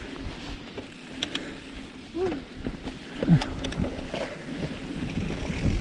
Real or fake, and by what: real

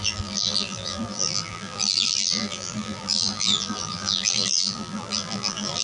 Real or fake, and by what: fake, vocoder, BigVGAN v2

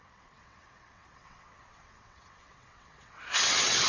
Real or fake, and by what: fake, vocoder, WaveNeXt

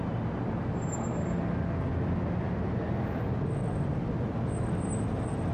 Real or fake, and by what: real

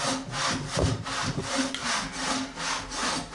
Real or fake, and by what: real